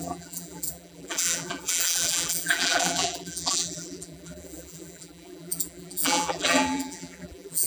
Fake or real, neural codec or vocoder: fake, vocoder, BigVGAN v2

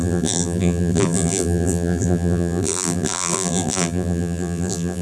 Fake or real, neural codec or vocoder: fake, vocoder, BigVGAN v2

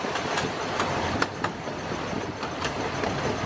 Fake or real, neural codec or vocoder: real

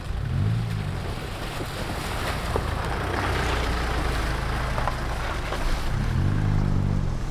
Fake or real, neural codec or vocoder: real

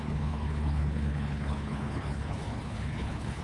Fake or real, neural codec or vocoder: fake, codec, HILCodec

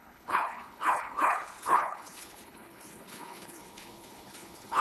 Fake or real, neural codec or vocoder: fake, codec, HILCodec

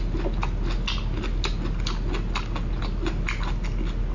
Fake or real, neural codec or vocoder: real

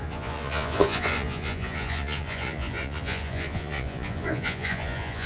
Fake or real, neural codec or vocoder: fake, vocoder, Vocos